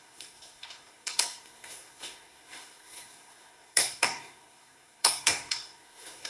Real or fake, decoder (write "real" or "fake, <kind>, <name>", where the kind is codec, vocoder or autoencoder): fake, codec, SNAC